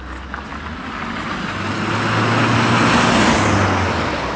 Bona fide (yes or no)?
yes